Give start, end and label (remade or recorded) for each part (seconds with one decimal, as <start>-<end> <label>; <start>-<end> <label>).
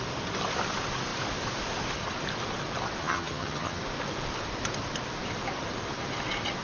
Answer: 0.0-3.0 recorded; 3.0-3.8 remade; 3.8-6.6 recorded